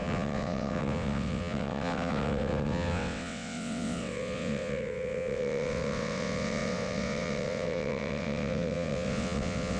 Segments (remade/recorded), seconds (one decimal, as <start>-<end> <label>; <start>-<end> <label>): 0.0-9.8 remade